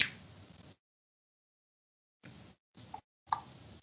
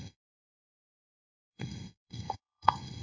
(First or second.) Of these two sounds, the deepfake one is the second